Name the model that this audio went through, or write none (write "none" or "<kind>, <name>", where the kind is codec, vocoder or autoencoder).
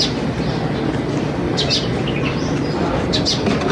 none